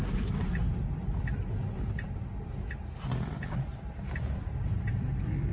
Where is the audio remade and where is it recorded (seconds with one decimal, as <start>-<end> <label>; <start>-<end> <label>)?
0.0-5.5 recorded